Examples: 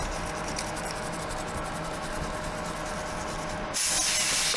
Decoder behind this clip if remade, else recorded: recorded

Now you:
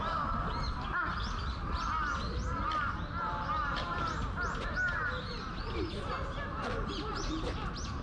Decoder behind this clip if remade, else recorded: recorded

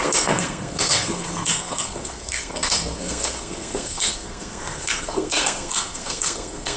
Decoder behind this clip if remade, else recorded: remade, codec, SNAC